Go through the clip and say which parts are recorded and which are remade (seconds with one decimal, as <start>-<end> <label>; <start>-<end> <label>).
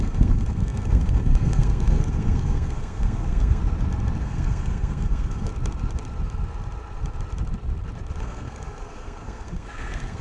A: 0.0-3.6 remade; 3.6-4.2 recorded; 4.2-5.5 remade; 5.5-8.2 recorded; 8.2-10.2 remade